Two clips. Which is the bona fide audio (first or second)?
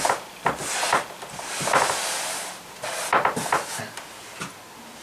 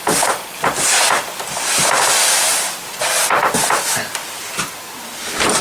first